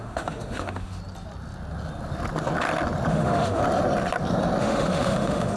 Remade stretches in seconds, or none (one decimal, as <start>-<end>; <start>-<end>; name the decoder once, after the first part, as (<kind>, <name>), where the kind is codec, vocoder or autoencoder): 0.0-1.0 (autoencoder, DAC-VAE); 3.1-3.6; 4.6-5.6